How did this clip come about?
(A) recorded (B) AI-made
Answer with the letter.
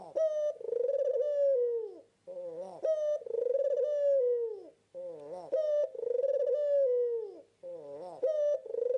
A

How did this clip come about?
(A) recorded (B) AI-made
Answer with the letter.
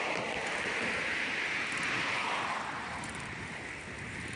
A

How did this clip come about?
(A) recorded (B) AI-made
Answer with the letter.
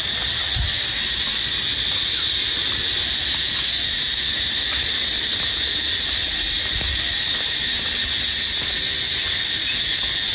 A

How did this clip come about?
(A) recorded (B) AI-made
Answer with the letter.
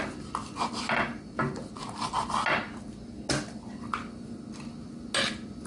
A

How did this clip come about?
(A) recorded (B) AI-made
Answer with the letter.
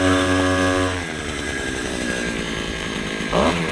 B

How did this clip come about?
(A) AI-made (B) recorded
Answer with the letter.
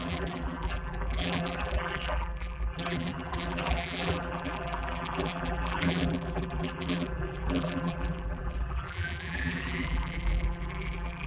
A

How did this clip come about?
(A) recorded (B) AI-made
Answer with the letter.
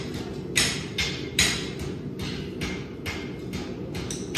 A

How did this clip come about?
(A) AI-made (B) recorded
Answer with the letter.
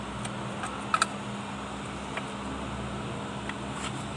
B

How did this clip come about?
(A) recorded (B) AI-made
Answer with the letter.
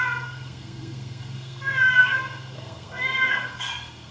B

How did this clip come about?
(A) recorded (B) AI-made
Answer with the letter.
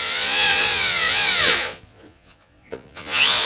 B